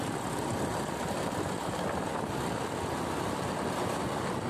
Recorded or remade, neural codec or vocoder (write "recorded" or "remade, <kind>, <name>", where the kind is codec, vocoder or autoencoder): recorded